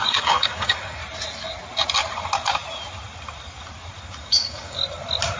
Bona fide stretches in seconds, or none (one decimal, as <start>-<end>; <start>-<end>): 1.0-4.2; 4.8-5.4